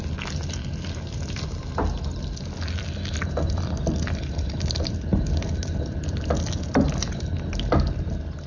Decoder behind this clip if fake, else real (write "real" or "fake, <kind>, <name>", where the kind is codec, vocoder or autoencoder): real